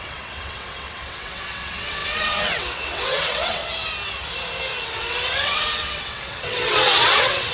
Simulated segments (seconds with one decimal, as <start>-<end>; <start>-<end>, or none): 0.0-3.6; 4.9-7.5